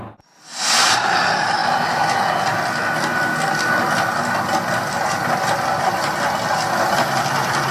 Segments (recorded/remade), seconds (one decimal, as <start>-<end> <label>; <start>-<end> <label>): 0.0-7.7 recorded